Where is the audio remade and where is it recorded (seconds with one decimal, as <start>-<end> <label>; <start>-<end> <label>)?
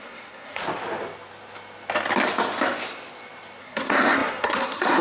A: 0.0-0.6 remade; 0.6-3.6 recorded; 3.6-5.0 remade